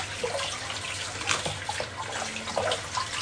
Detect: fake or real real